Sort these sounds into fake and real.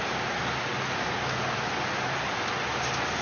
real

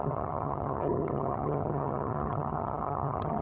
fake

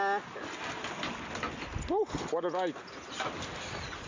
real